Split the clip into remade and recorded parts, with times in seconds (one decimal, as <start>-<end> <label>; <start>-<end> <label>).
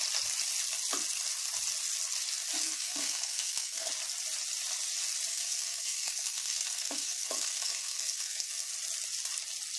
0.0-2.6 recorded; 2.6-3.9 remade; 3.9-5.3 recorded; 5.3-8.7 remade; 8.7-9.8 recorded